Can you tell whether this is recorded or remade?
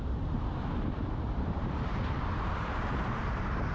remade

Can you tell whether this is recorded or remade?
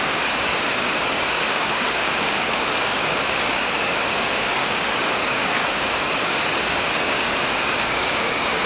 remade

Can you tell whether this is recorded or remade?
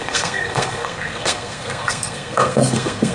remade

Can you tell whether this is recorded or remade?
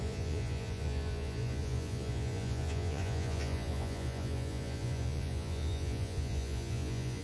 remade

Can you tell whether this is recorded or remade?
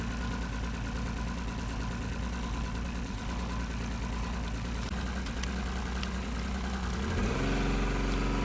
recorded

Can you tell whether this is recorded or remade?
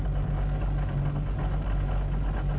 recorded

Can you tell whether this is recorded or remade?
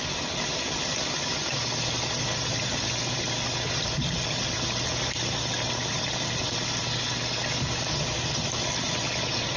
recorded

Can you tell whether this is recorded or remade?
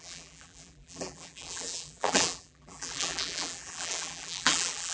remade